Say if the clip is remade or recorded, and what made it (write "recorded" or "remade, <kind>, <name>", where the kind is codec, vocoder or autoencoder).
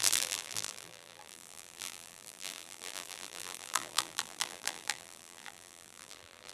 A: remade, vocoder, BigVGAN v2